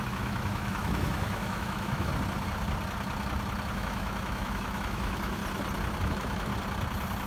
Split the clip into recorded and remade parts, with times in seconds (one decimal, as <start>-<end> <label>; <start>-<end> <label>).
0.0-2.1 remade; 2.1-3.7 recorded; 3.7-5.4 remade; 5.4-6.0 recorded; 6.0-6.5 remade; 6.5-7.3 recorded